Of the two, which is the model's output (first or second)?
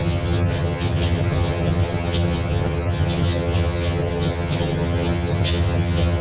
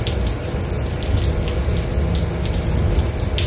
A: first